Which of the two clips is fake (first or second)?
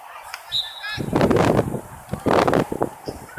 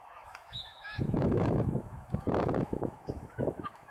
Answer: second